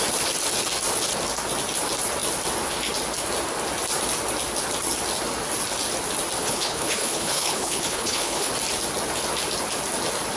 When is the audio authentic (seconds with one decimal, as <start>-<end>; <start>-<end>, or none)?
0.0-6.4; 8.5-10.4